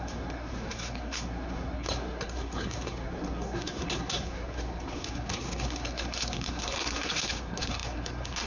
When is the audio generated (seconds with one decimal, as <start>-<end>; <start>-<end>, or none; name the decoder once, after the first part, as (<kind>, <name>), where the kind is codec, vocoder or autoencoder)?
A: 0.0-8.5 (codec, SNAC)